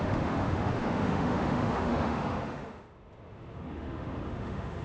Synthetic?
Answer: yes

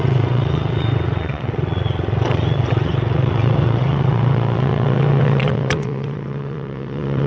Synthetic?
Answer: yes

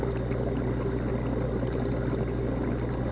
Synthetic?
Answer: no